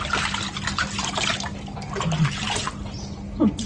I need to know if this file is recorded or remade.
recorded